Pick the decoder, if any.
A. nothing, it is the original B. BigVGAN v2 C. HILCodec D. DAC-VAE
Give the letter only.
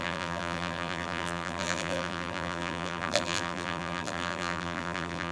B